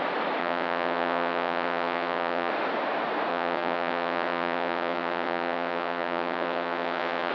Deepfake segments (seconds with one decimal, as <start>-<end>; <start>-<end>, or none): 0.4-2.5; 3.3-7.3

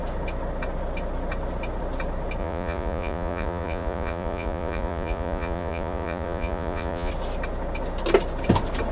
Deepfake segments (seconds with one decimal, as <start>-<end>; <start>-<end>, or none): 2.4-7.1

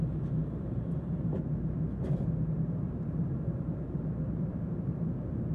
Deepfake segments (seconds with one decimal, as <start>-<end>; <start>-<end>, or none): 0.0-5.5